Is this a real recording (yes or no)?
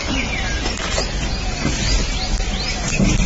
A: yes